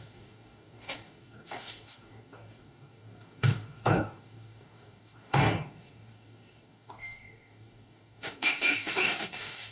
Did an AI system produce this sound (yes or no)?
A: yes